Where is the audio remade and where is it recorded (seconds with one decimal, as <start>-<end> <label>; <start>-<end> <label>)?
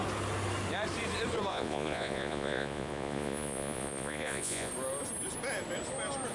0.0-1.5 recorded; 1.5-4.7 remade; 4.7-6.3 recorded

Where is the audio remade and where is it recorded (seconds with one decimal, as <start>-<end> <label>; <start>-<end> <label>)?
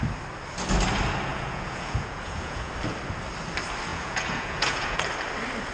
0.0-1.3 recorded; 1.3-2.7 remade; 2.7-3.9 recorded; 3.9-5.0 remade; 5.0-5.7 recorded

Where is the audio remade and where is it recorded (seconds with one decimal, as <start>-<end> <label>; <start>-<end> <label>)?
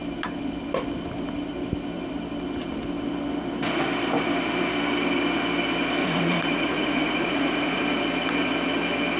0.0-6.0 recorded; 6.0-7.8 remade; 7.8-9.2 recorded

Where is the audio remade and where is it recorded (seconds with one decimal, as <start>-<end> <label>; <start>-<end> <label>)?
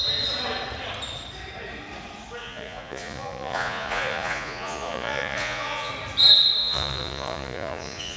0.0-2.4 recorded; 2.4-5.9 remade; 5.9-6.6 recorded; 6.6-8.2 remade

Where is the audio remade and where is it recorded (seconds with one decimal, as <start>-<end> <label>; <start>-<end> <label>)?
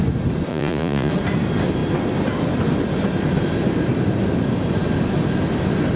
0.0-0.5 recorded; 0.5-1.1 remade; 1.1-6.0 recorded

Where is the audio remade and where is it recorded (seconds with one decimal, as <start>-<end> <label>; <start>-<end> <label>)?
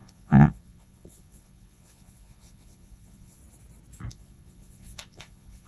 0.0-3.4 remade; 3.4-4.1 recorded; 4.1-5.7 remade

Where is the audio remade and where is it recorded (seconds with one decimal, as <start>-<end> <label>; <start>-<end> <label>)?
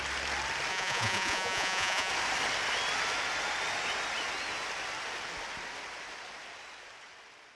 0.0-0.7 recorded; 0.7-2.1 remade; 2.1-7.6 recorded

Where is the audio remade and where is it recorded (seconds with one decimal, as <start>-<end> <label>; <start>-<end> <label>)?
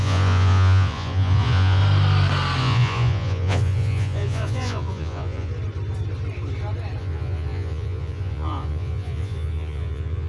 0.0-1.8 remade; 1.8-2.6 recorded; 2.6-5.5 remade; 5.5-7.0 recorded; 7.0-10.3 remade